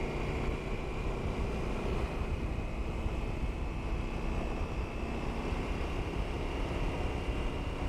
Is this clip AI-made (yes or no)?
no